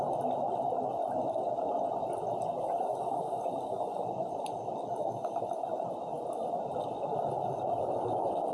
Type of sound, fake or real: real